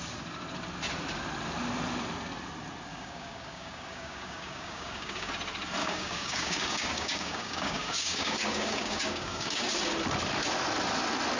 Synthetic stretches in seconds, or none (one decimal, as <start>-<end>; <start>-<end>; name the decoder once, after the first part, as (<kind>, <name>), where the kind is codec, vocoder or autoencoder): 2.9-5.3 (codec, DAC); 5.8-9.7